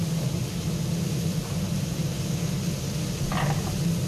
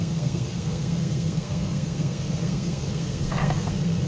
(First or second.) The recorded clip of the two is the first